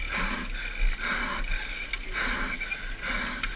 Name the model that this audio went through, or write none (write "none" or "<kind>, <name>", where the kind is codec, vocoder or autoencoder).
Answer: none